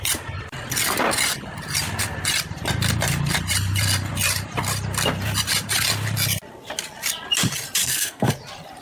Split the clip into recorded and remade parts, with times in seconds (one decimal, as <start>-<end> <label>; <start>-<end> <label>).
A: 0.0-7.8 recorded; 7.8-8.3 remade; 8.3-8.8 recorded